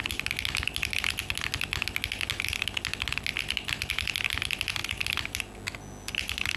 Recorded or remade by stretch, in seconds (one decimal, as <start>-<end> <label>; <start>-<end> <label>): 0.0-6.6 recorded